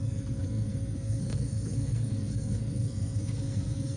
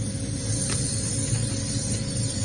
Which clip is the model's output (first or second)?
first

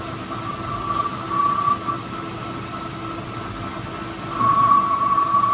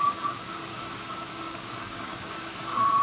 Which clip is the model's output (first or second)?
second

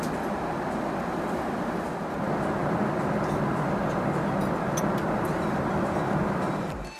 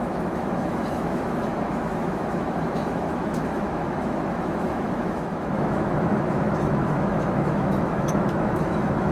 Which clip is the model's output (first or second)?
second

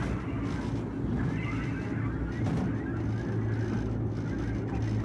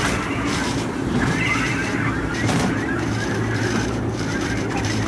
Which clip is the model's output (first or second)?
second